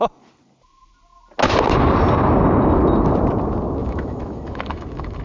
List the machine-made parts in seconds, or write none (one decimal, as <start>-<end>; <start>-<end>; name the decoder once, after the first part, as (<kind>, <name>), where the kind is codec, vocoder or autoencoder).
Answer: 3.8-5.2 (autoencoder, DAC-VAE)